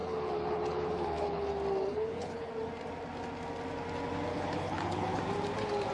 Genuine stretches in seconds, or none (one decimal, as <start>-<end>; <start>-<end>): 1.5-1.9; 2.5-4.3; 5.2-5.9